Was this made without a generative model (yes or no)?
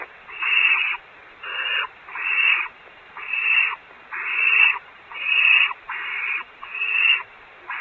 no